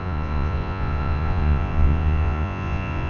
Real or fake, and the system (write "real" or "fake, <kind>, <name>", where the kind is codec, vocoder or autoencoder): fake, vocoder, Vocos